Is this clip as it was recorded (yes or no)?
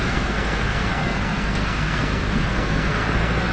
no